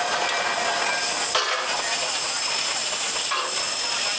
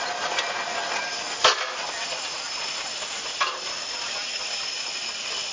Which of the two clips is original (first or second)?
first